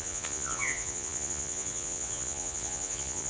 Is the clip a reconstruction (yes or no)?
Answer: yes